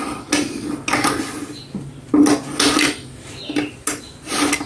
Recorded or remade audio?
recorded